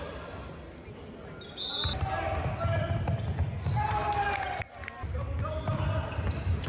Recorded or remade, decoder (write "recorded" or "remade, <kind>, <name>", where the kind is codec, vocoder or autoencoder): recorded